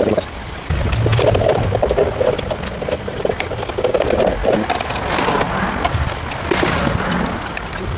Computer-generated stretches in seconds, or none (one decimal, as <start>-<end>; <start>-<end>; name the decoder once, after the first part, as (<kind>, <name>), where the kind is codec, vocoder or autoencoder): none